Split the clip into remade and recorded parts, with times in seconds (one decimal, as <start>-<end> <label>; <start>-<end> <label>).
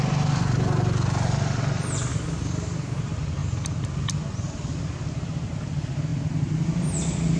0.0-2.1 recorded; 2.1-3.0 remade; 3.0-7.4 recorded